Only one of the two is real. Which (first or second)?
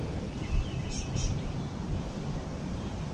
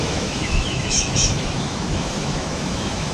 first